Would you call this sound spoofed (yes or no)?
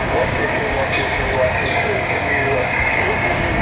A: yes